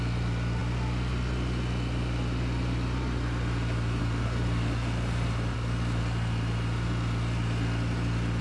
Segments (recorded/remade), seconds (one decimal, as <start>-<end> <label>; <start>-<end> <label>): 0.0-8.4 recorded